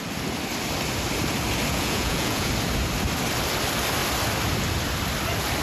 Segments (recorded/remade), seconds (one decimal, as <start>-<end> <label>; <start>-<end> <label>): 0.0-1.7 recorded; 1.7-2.5 remade; 2.5-5.6 recorded